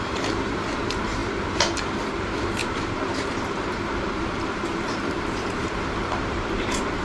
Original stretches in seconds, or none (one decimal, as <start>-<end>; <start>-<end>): none